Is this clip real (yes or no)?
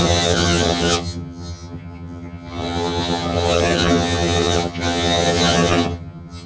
no